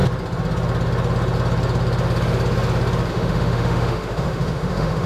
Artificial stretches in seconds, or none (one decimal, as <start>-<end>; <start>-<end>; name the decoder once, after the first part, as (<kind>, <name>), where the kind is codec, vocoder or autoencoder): 3.1-5.1 (autoencoder, DAC-VAE)